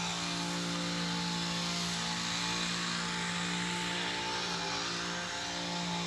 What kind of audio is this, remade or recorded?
recorded